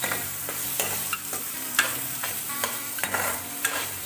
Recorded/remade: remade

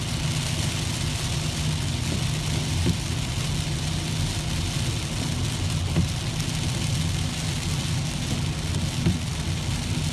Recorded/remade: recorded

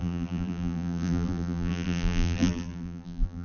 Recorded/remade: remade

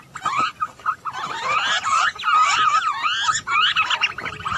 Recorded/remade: recorded